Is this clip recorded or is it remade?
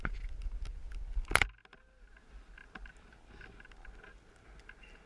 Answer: recorded